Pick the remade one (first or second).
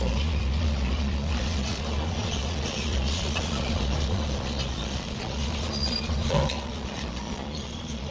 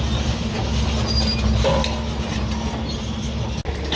first